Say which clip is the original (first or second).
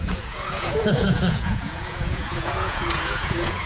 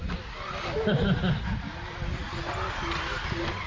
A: second